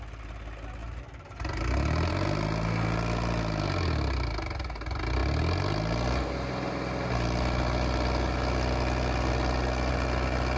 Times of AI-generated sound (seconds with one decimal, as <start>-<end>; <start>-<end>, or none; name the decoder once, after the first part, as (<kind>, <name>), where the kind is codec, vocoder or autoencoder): none